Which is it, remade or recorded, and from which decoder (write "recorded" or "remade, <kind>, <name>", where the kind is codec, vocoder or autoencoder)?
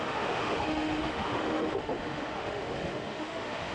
remade, autoencoder, DAC-VAE